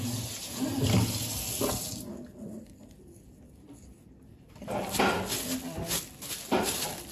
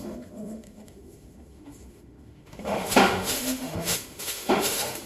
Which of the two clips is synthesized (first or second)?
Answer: second